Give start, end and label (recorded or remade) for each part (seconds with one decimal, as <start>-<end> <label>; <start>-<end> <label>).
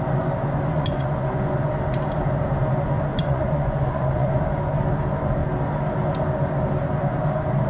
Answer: 0.0-0.7 recorded; 0.7-1.7 remade; 1.7-3.1 recorded; 3.1-4.4 remade; 4.4-7.7 recorded